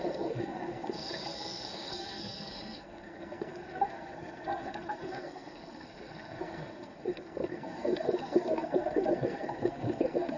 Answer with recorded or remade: remade